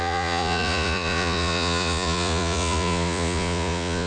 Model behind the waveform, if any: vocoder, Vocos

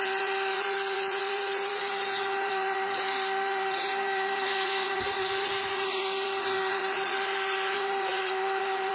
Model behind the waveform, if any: vocoder, Vocos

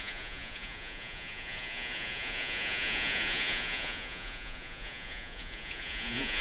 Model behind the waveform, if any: vocoder, Vocos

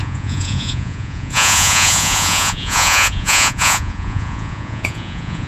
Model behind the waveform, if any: vocoder, Vocos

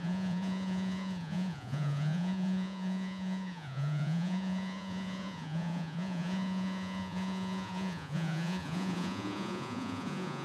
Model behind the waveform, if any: vocoder, Vocos